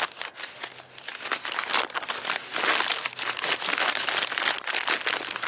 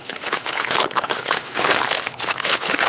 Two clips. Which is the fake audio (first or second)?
second